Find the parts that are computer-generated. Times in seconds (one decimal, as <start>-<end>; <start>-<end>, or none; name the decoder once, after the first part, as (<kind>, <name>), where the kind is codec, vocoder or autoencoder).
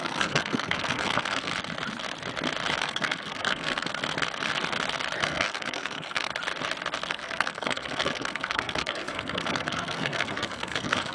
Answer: 0.0-1.5 (codec, SNAC); 2.8-3.9; 5.2-6.3; 7.1-11.1